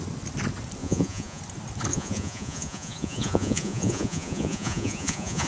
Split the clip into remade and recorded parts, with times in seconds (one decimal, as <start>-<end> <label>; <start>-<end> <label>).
0.0-0.8 recorded; 0.8-1.4 remade; 1.4-1.9 recorded; 1.9-5.5 remade